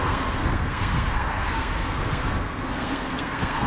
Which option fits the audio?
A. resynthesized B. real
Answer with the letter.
A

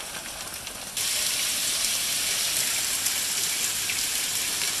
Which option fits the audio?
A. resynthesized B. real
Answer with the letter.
B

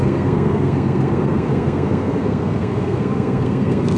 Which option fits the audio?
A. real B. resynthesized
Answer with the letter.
B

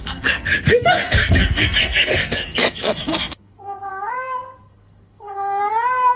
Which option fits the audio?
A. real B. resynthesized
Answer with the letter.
B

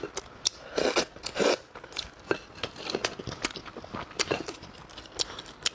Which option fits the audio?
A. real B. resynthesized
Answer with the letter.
A